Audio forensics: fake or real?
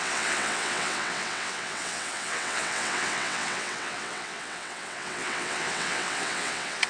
fake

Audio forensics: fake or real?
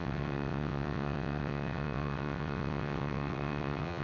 fake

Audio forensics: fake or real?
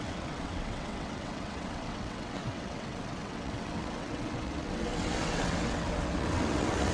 fake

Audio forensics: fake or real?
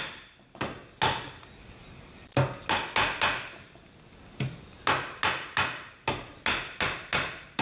real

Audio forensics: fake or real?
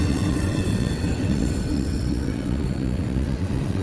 fake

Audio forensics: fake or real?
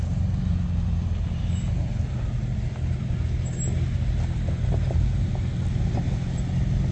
real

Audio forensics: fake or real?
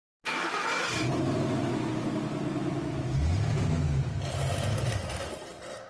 real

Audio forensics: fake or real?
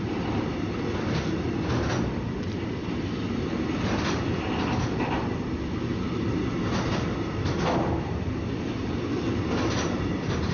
real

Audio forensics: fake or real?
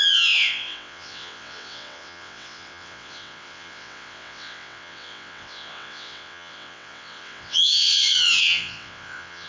fake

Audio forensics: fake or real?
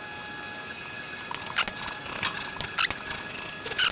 real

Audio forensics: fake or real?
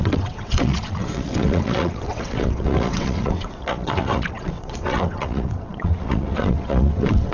fake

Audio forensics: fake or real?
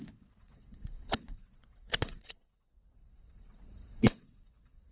fake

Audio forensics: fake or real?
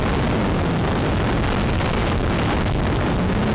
real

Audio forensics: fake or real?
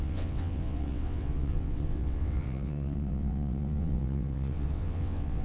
fake